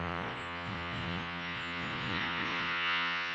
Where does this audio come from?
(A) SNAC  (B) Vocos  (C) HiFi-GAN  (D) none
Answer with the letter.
B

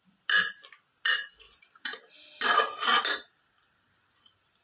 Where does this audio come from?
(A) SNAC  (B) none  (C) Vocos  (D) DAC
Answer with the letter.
B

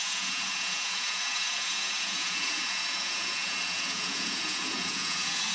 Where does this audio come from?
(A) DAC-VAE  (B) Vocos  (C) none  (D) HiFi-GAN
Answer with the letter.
B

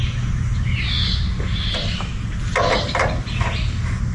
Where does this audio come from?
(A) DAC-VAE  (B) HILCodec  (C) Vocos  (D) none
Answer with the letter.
D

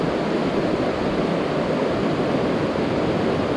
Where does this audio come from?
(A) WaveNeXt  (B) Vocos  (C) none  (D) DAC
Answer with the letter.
C